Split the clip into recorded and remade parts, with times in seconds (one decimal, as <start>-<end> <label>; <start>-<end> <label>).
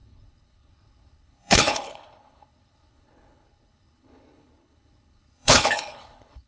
0.0-6.5 remade